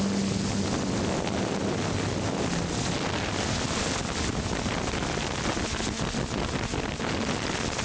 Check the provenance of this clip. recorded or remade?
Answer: recorded